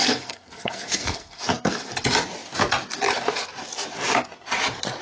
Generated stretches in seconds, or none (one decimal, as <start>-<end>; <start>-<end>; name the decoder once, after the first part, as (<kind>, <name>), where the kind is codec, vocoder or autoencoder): 0.0-1.9 (codec, SNAC)